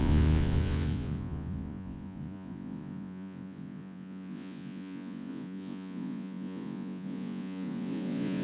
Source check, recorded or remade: remade